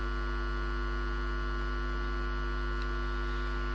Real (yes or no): yes